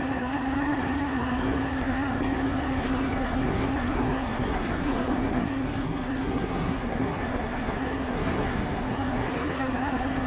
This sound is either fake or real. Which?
fake